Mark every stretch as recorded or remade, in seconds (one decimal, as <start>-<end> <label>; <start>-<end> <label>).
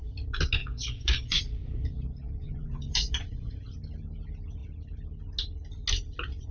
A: 0.0-0.6 recorded; 0.6-1.4 remade; 1.4-2.4 recorded; 2.4-3.6 remade; 3.6-6.5 recorded